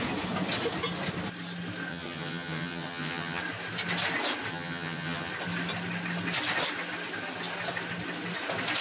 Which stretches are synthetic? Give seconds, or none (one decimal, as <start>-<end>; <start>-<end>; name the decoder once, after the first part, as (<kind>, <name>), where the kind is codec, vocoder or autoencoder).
1.9-3.4 (vocoder, HiFi-GAN); 4.5-5.3